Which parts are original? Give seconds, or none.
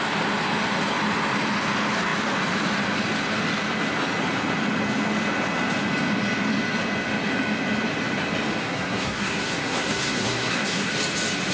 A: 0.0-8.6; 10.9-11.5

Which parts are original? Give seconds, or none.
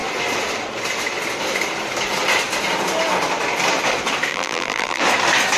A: 0.0-4.3; 5.0-5.6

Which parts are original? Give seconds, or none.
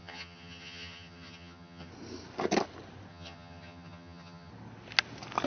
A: 1.9-3.1; 4.5-5.5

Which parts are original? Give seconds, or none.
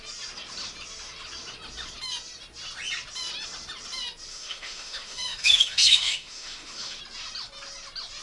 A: 0.0-4.3; 7.0-8.2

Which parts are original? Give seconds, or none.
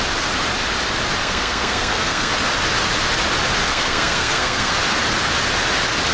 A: 0.0-1.2; 2.3-3.7; 4.7-6.1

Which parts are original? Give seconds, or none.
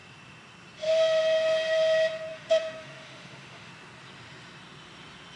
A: 0.0-2.3; 3.7-5.4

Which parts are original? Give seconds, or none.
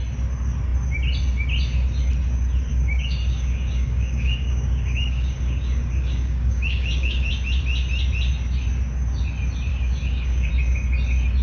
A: 0.0-2.7; 7.3-9.7; 10.5-11.4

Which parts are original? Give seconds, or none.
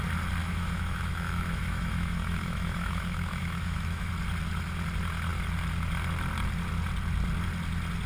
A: 0.0-0.4; 4.1-8.1